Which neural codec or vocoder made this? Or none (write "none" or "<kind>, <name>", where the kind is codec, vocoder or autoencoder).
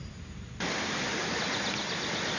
none